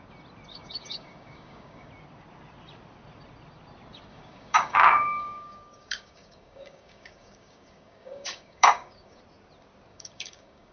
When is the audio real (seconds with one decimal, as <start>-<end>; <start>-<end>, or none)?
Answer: 0.0-0.5; 1.9-4.1; 9.2-9.9